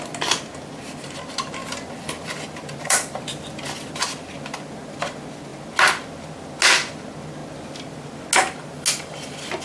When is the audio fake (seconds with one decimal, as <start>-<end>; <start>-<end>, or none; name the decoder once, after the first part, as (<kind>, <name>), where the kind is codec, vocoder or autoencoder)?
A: 1.6-3.9 (vocoder, BigVGAN v2)